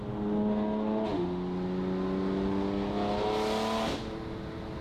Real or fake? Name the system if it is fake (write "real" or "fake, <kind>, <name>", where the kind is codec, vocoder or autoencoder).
real